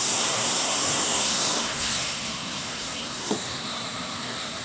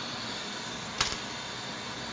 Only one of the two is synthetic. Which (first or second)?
first